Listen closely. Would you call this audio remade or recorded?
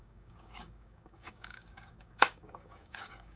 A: remade